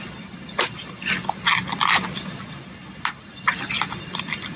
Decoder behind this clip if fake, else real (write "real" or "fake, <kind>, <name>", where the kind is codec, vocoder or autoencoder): real